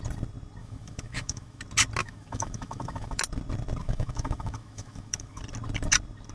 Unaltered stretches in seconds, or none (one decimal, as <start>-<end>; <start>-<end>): 0.0-0.6; 1.6-2.0; 3.2-3.8; 5.4-6.3